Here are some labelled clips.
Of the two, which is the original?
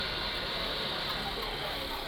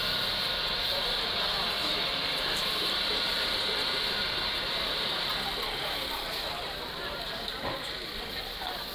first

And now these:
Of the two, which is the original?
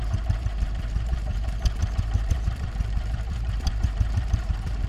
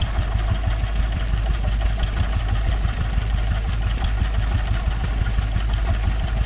second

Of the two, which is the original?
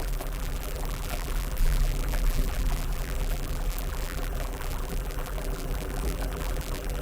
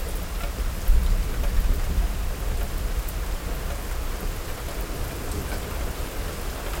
second